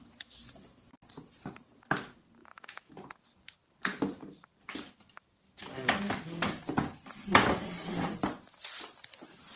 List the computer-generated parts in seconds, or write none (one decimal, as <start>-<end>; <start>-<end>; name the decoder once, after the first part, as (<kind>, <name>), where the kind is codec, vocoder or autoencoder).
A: 2.4-2.9 (autoencoder, DAC-VAE)